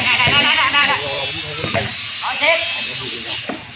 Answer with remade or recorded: remade